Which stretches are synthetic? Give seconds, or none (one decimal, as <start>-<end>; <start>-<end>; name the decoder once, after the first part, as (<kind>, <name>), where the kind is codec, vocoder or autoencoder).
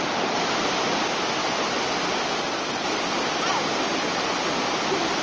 none